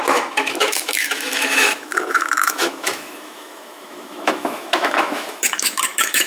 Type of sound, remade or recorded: remade